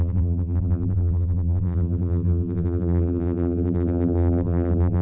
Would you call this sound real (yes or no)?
no